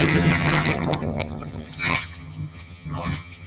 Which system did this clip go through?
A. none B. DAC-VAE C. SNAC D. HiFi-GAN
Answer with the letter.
D